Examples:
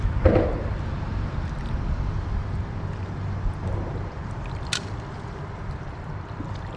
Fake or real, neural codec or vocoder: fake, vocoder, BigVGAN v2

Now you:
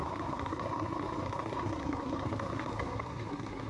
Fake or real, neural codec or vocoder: fake, codec, SNAC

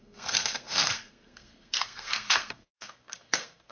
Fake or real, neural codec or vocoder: fake, codec, SNAC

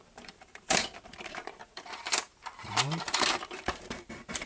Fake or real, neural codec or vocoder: fake, vocoder, BigVGAN v2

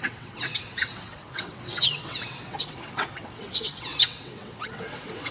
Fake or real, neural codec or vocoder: fake, vocoder, WaveNeXt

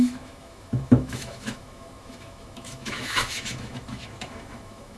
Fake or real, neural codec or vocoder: fake, autoencoder, DAC-VAE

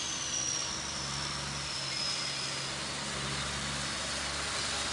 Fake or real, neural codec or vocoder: real